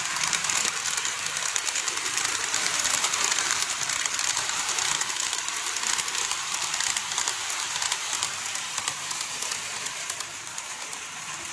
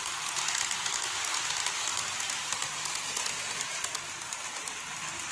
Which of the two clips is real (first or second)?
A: second